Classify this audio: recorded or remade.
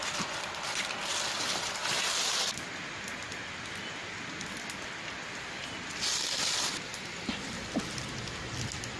recorded